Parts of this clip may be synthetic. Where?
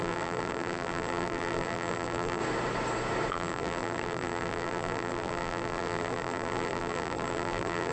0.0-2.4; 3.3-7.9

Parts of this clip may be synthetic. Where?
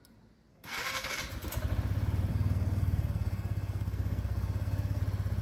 0.5-1.2; 2.3-5.0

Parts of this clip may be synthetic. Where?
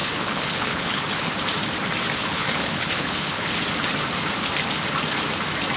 0.0-1.3; 2.2-3.6